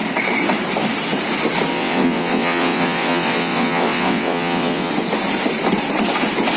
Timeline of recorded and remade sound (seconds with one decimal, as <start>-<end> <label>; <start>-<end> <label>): 0.0-1.7 recorded; 1.7-4.9 remade; 4.9-6.6 recorded

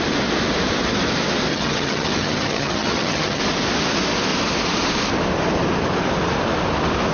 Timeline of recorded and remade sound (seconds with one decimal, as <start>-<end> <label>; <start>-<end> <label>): 0.0-1.5 recorded; 1.5-3.4 remade; 3.4-7.1 recorded